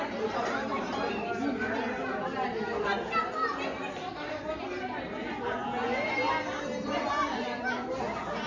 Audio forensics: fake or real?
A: real